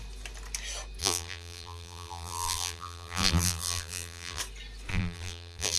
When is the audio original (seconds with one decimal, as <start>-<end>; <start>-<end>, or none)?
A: 0.0-1.0; 4.4-4.9